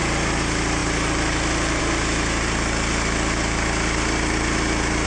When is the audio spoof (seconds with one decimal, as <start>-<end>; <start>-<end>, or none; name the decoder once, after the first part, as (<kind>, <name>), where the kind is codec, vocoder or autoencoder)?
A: none